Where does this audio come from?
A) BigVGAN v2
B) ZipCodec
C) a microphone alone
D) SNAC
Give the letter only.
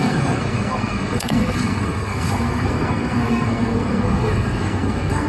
D